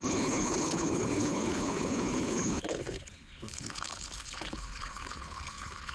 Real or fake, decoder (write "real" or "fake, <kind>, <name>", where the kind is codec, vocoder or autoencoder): fake, codec, HILCodec